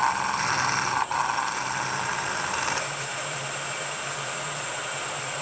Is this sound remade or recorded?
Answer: remade